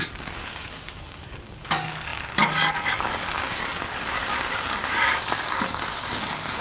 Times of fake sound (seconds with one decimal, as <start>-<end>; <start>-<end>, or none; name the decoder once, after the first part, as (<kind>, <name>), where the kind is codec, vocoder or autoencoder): 0.0-6.6 (codec, DAC)